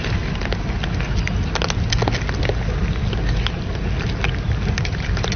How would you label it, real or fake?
real